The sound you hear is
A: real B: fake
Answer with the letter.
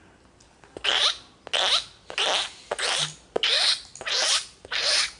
A